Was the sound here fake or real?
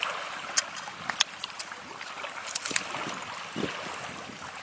real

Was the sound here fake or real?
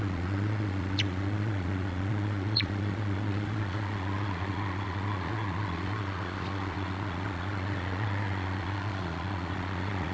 fake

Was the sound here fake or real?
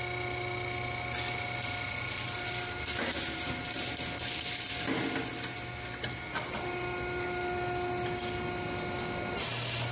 real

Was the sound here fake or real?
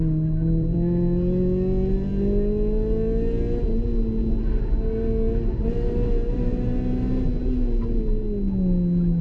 real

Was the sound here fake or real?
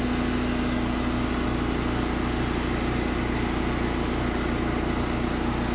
real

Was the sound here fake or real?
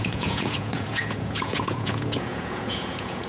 fake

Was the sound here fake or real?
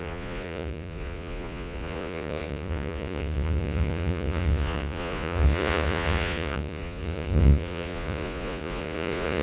fake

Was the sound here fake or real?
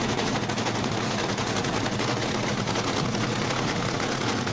fake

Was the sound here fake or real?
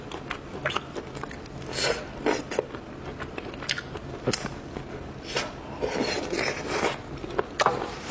real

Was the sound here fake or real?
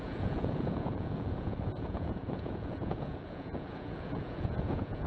fake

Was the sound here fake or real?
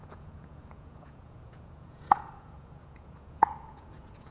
fake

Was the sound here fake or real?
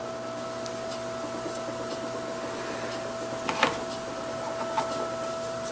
real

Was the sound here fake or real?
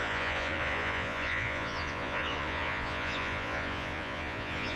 fake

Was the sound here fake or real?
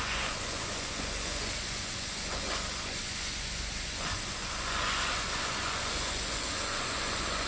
fake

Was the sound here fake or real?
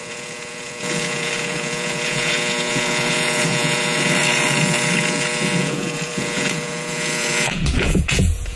fake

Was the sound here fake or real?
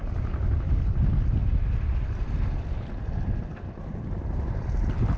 real